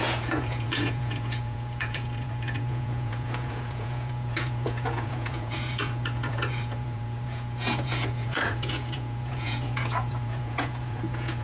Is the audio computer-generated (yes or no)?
yes